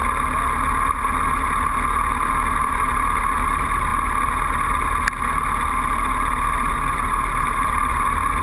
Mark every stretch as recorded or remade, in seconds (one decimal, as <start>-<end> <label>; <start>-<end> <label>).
0.0-2.3 recorded; 2.3-3.9 remade; 3.9-6.7 recorded; 6.7-8.4 remade